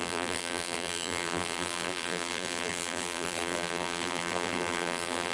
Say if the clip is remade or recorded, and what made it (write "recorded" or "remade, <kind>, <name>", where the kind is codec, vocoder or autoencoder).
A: remade, vocoder, BigVGAN v2